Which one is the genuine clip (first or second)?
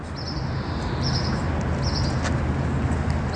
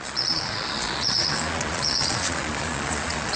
first